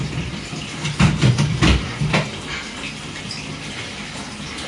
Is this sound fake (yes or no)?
yes